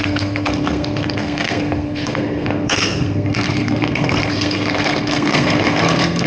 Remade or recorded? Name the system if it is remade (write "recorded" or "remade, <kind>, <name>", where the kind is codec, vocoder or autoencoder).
remade, codec, SNAC